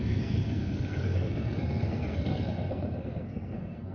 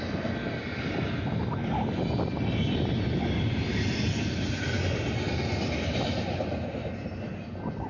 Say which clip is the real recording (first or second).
second